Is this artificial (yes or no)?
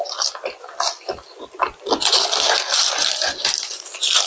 no